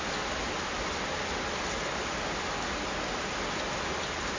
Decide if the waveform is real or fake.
real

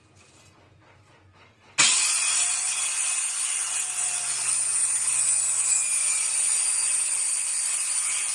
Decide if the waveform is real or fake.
real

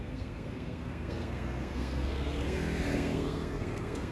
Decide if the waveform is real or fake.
fake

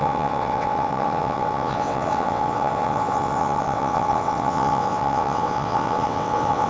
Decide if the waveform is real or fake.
fake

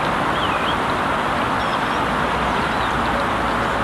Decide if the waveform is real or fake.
real